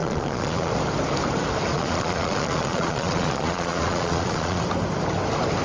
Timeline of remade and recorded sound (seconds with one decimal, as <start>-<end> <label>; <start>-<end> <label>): 0.0-0.7 remade; 0.7-1.7 recorded; 1.7-4.6 remade; 4.6-5.6 recorded

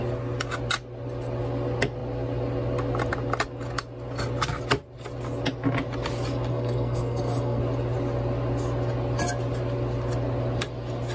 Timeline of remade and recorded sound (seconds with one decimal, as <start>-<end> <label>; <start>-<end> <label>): 0.0-6.5 recorded; 6.5-7.6 remade; 7.6-11.1 recorded

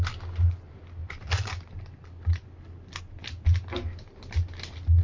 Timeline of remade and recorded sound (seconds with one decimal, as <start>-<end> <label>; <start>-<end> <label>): 0.0-1.0 recorded; 1.0-3.0 remade; 3.0-5.0 recorded

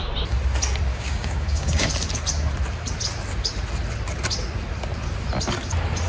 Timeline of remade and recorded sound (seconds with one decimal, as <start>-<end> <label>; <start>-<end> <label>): 0.0-0.9 recorded; 0.9-1.9 remade; 1.9-6.1 recorded